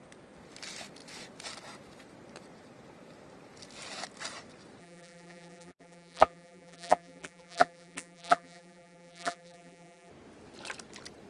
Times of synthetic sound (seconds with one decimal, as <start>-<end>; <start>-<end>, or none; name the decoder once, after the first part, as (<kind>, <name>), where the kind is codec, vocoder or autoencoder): 4.8-10.1 (vocoder, BigVGAN v2)